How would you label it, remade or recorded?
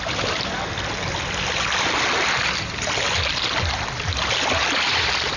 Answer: recorded